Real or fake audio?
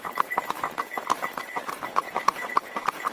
fake